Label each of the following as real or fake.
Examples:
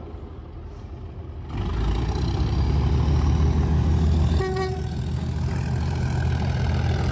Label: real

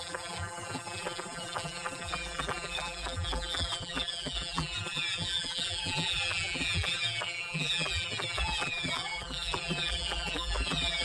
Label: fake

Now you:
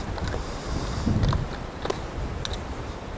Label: real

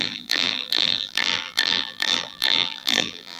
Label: fake